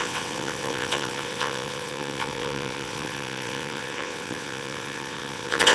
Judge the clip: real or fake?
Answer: fake